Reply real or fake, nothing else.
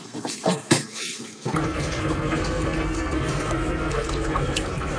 fake